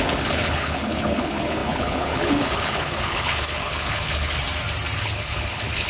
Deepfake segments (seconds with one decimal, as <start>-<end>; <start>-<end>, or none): 0.0-4.4; 5.0-5.9